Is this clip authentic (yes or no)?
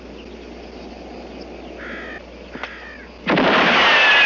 yes